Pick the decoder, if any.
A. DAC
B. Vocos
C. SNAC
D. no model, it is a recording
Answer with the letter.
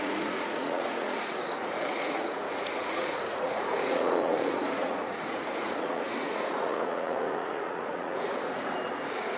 B